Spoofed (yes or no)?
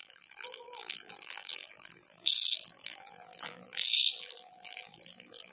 yes